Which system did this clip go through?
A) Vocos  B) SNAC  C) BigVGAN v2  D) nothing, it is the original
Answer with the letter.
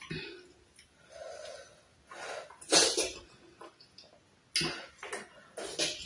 D